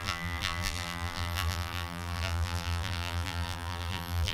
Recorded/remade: remade